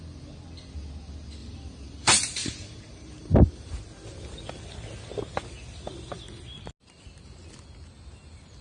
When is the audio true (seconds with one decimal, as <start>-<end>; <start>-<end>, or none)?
0.0-1.4; 3.8-8.6